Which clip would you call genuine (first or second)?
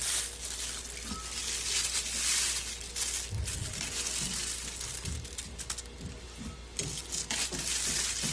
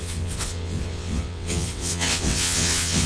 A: first